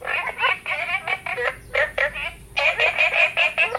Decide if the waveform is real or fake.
real